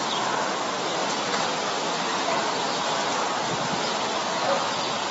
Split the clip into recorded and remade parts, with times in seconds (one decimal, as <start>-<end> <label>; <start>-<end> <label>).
0.0-5.1 recorded